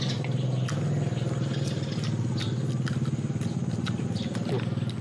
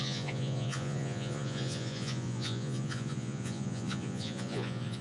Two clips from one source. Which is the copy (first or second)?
second